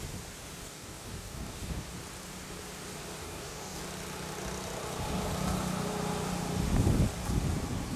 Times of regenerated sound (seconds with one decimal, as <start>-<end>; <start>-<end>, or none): 0.6-1.8; 3.2-3.8